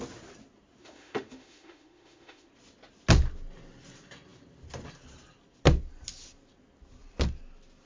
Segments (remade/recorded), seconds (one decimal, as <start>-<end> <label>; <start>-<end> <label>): 0.0-0.8 recorded; 0.8-2.5 remade; 2.5-7.9 recorded

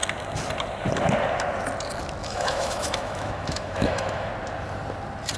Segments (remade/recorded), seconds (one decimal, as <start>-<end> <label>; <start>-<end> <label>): 0.0-2.2 recorded; 2.2-4.3 remade; 4.3-5.4 recorded